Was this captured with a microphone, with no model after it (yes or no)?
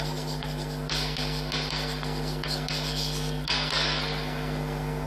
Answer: no